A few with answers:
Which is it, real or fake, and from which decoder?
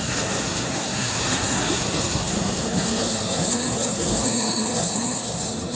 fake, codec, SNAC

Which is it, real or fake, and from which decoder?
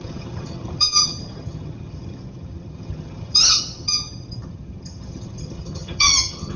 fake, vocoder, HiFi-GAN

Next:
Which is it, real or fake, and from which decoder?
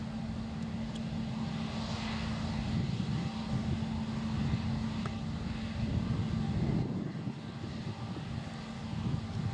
real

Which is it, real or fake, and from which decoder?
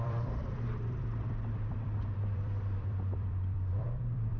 fake, vocoder, BigVGAN v2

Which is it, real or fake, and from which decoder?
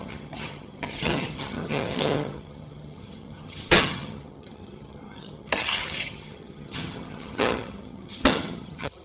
fake, vocoder, HiFi-GAN